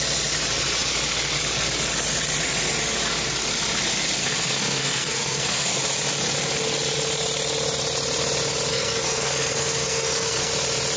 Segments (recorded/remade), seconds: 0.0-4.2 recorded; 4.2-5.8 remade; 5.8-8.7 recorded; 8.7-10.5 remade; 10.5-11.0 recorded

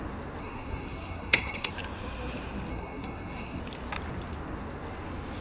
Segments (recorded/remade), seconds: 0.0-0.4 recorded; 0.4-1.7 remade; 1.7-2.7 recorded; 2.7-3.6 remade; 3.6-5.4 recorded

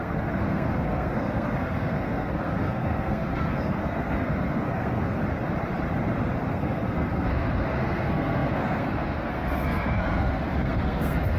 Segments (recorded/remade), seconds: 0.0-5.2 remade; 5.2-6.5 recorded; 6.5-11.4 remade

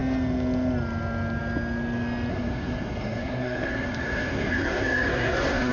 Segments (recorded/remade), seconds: 0.0-2.3 recorded; 2.3-5.7 remade

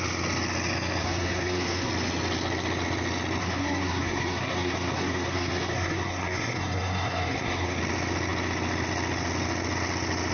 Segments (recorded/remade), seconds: 0.0-1.0 recorded; 1.0-1.9 remade; 1.9-3.4 recorded; 3.4-7.8 remade; 7.8-10.3 recorded